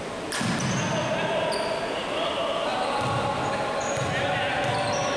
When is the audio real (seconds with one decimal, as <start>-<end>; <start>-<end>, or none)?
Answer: 0.0-5.2